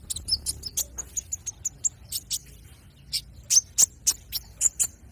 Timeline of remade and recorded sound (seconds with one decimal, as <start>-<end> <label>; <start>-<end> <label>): 0.0-5.1 recorded